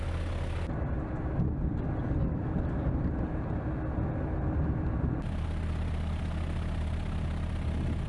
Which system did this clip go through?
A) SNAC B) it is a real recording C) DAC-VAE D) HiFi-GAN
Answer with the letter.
B